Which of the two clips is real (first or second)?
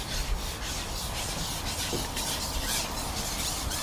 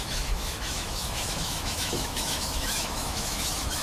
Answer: first